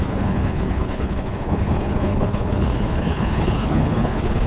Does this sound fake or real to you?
fake